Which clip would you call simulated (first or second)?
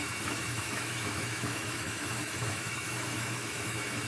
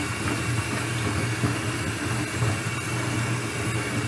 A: first